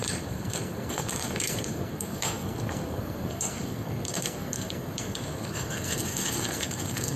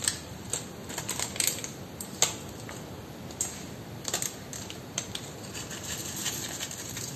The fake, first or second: first